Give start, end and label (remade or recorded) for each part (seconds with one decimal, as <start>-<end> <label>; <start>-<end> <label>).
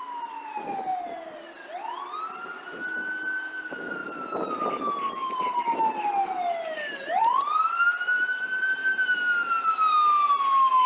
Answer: 0.0-10.9 recorded